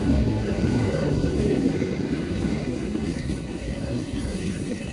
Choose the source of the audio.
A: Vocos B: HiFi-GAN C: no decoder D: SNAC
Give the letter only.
D